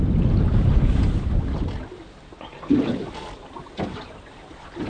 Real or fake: real